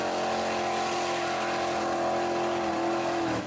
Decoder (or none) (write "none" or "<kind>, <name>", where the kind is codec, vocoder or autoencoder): none